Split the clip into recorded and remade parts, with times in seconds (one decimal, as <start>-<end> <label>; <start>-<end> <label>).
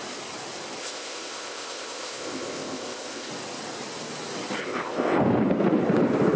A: 0.0-0.8 recorded; 0.8-3.3 remade; 3.3-4.6 recorded; 4.6-5.2 remade; 5.2-6.4 recorded